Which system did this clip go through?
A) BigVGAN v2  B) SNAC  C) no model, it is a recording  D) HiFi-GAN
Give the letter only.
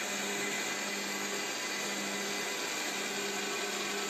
C